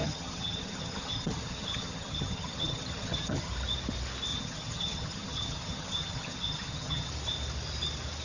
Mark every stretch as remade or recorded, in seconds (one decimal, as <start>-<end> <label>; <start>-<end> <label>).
0.0-3.5 remade; 3.5-4.3 recorded; 4.3-7.1 remade; 7.1-8.2 recorded